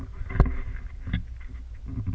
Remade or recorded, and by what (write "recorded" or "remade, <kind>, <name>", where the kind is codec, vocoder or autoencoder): recorded